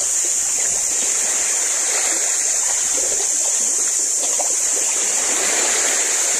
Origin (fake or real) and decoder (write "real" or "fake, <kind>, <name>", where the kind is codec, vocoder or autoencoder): fake, vocoder, BigVGAN v2